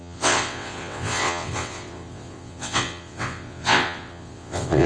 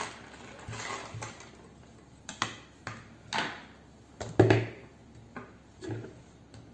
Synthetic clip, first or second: first